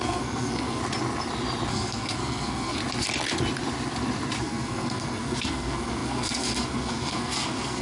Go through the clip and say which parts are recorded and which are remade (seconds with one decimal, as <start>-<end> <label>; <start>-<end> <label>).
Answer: 0.0-0.8 remade; 0.8-1.7 recorded; 1.7-2.8 remade; 2.8-4.4 recorded; 4.4-7.8 remade